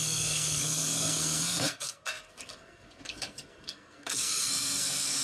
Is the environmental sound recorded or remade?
remade